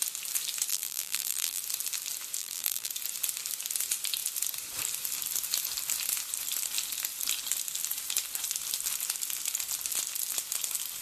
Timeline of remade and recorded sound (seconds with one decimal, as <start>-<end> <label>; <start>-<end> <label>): 0.0-0.7 recorded; 0.7-1.6 remade; 1.6-2.4 recorded; 2.4-2.9 remade; 2.9-11.0 recorded